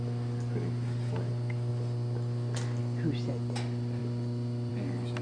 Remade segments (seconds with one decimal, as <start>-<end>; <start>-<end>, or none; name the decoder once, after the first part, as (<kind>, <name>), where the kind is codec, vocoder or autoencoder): none